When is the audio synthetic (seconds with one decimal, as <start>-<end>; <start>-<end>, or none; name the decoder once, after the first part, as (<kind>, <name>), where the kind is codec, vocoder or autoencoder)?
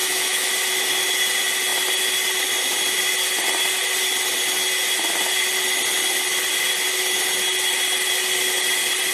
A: 0.0-0.5 (autoencoder, DAC-VAE)